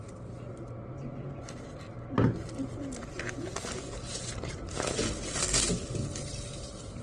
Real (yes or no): yes